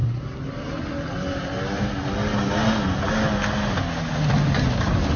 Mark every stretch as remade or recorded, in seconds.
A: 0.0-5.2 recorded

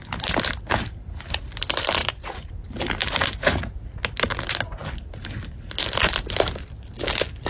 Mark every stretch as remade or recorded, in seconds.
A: 0.0-2.0 recorded; 2.0-2.5 remade; 2.5-3.0 recorded; 3.0-4.0 remade; 4.0-7.5 recorded

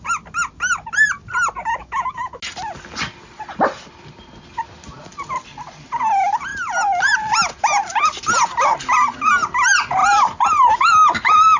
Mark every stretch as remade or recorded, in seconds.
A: 0.0-1.8 recorded; 1.8-2.4 remade; 2.4-11.6 recorded